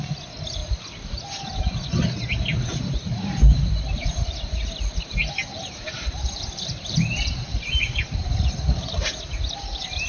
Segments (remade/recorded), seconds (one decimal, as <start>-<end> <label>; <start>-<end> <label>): 0.0-0.6 recorded; 0.6-1.7 remade; 1.7-2.7 recorded; 2.7-4.2 remade; 4.2-5.5 recorded; 5.5-8.4 remade; 8.4-10.1 recorded